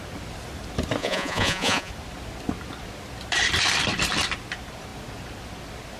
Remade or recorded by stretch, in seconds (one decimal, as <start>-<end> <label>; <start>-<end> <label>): 0.0-1.0 recorded; 1.0-1.9 remade; 1.9-6.0 recorded